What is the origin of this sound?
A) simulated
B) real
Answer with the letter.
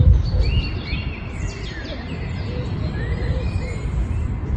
B